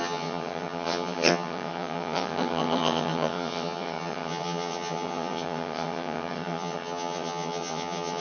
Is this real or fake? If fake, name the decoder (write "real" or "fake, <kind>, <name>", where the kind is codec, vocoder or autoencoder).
fake, vocoder, HiFi-GAN